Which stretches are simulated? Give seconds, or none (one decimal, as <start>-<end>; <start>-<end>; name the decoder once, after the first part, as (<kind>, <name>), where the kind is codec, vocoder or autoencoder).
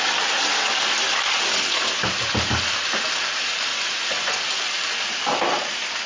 3.7-4.4 (vocoder, Vocos)